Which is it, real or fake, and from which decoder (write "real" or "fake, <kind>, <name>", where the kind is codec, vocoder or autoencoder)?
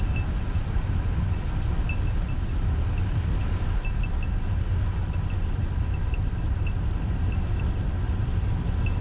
real